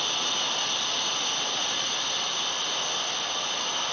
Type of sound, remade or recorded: recorded